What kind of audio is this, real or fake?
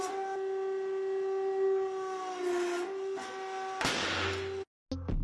real